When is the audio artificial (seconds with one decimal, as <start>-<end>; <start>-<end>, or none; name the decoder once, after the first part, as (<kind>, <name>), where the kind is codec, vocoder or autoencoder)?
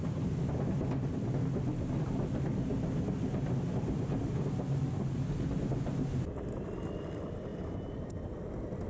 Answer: none